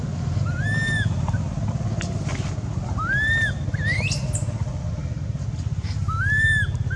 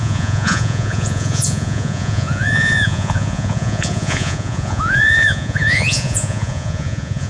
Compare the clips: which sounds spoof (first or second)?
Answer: second